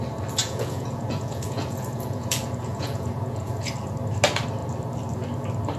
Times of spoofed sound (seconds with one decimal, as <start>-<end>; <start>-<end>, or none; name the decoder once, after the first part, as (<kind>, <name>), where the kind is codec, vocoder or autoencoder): 0.4-3.7 (vocoder, Vocos)